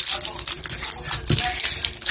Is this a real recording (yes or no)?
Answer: yes